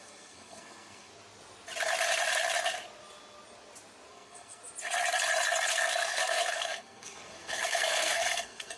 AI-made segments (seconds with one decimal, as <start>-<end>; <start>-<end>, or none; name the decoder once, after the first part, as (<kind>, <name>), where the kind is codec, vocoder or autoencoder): 0.0-1.1 (codec, SNAC); 4.1-4.6; 5.7-8.8